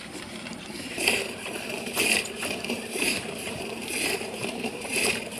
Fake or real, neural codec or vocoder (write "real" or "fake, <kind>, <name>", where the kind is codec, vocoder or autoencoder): fake, vocoder, BigVGAN v2